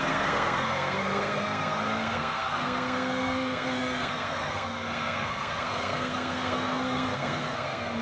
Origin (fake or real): fake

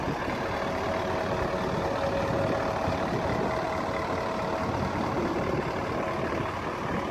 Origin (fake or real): real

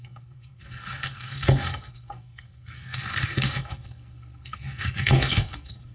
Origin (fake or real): fake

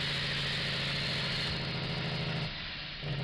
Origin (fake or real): real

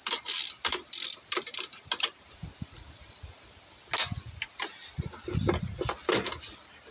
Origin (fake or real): real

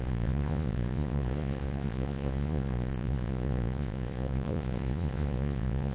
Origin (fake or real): fake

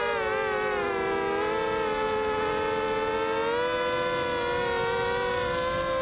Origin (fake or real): real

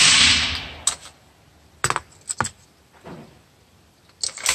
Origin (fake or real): real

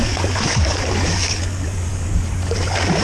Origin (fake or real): fake